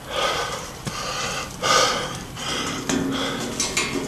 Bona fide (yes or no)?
yes